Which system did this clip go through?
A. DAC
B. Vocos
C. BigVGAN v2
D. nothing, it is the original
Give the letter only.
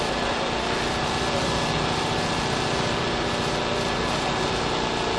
D